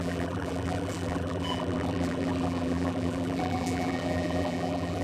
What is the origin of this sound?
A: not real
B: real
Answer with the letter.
A